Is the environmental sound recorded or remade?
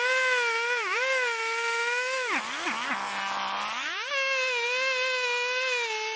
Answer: recorded